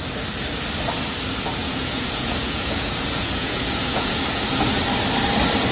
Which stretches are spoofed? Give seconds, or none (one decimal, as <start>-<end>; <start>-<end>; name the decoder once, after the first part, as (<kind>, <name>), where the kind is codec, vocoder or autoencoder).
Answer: 1.6-4.4 (vocoder, Vocos)

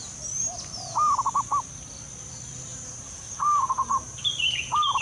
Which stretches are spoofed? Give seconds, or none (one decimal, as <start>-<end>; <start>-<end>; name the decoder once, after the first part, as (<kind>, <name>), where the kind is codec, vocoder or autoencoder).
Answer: 2.7-5.0 (vocoder, BigVGAN v2)